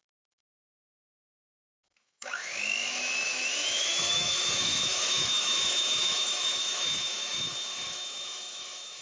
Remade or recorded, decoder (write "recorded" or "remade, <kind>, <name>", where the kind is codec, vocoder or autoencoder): remade, autoencoder, DAC-VAE